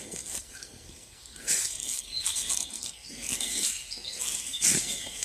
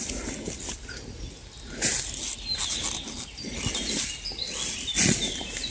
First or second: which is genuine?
second